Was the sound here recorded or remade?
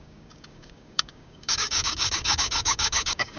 remade